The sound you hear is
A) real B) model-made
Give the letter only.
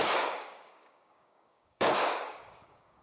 B